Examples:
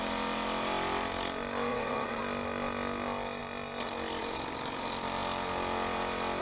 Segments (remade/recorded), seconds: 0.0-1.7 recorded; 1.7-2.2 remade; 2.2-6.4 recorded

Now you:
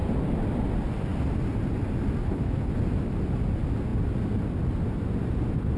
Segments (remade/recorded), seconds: 0.0-2.2 recorded; 2.2-2.7 remade; 2.7-5.8 recorded

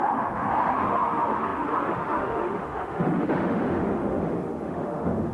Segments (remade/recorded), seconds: 0.0-5.3 remade